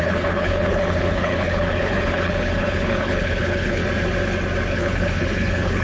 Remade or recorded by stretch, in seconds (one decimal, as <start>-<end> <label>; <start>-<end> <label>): 0.0-3.8 remade; 3.8-4.7 recorded; 4.7-5.8 remade